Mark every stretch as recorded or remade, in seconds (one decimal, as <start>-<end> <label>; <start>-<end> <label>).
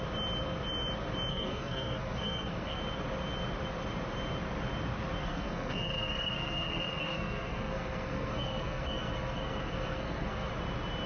0.0-1.3 recorded; 1.3-2.8 remade; 2.8-5.2 recorded; 5.2-10.5 remade; 10.5-11.1 recorded